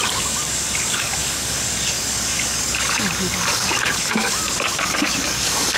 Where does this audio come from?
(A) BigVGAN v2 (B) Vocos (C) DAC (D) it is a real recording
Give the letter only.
C